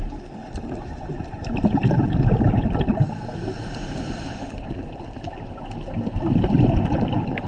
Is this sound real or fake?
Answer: fake